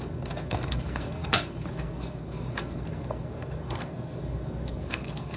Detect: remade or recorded remade